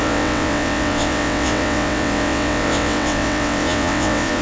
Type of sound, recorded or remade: remade